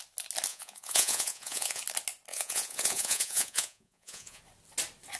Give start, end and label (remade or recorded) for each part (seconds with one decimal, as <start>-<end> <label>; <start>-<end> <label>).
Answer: 0.0-0.5 recorded; 0.5-1.8 remade; 1.8-2.3 recorded; 2.3-4.4 remade; 4.4-5.2 recorded